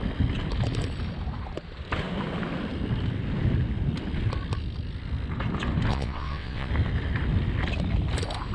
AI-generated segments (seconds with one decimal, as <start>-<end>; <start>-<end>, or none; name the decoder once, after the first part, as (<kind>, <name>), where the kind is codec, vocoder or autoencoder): 5.9-6.7 (vocoder, WaveNeXt)